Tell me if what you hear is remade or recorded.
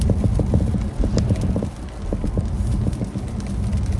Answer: recorded